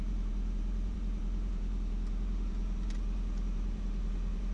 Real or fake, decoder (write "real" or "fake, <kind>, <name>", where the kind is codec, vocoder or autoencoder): fake, vocoder, BigVGAN v2